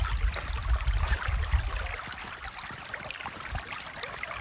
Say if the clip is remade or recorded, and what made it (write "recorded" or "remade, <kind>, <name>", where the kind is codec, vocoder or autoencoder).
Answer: recorded